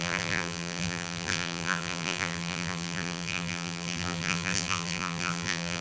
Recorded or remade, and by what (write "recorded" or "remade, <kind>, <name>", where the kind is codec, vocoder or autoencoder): remade, vocoder, BigVGAN v2